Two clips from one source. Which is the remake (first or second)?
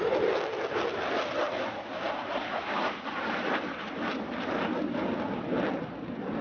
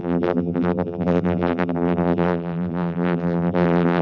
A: second